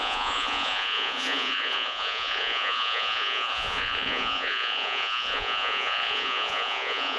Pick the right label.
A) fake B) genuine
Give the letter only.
A